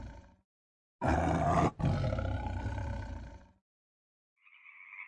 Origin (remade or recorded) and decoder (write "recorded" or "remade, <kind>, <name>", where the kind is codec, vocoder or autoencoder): recorded